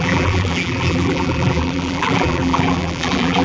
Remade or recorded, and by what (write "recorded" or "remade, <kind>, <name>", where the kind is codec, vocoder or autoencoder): remade, vocoder, BigVGAN v2